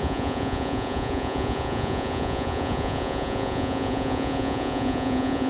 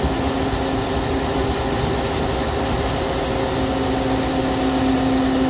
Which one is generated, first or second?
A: first